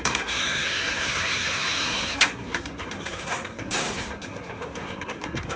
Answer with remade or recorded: remade